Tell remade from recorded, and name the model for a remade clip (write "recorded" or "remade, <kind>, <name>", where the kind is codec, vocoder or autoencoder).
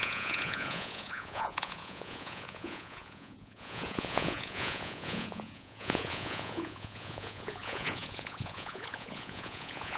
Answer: remade, vocoder, Vocos